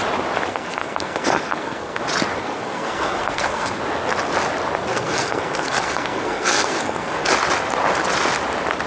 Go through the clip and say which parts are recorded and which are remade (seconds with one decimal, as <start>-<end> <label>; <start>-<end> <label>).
0.0-0.5 recorded; 0.5-2.0 remade; 2.0-2.4 recorded; 2.4-3.8 remade; 3.8-4.9 recorded; 4.9-7.3 remade; 7.3-8.9 recorded